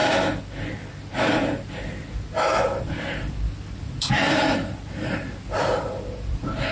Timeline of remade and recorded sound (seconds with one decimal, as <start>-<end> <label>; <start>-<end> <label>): 0.0-0.6 remade; 0.6-2.5 recorded; 2.5-6.7 remade